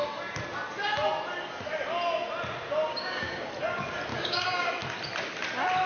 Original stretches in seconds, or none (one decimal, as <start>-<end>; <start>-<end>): 0.0-2.9; 3.5-4.1; 4.7-5.9